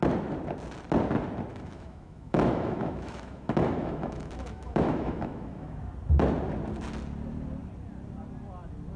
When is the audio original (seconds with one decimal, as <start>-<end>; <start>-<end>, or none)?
0.0-1.5; 5.8-9.0